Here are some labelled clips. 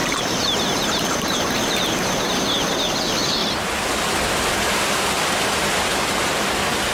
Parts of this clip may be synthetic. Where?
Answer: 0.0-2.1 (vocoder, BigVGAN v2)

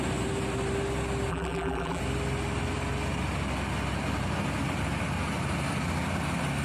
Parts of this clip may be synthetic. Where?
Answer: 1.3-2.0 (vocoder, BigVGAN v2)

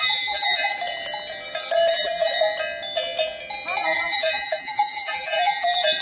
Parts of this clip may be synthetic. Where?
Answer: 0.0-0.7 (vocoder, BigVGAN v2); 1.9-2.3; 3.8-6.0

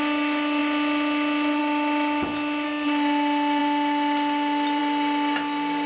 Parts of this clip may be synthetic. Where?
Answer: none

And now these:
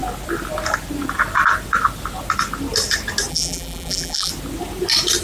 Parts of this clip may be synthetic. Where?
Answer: 3.3-4.3 (vocoder, BigVGAN v2)

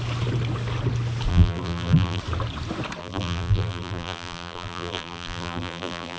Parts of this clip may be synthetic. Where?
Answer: 1.3-2.2 (vocoder, BigVGAN v2); 3.0-6.2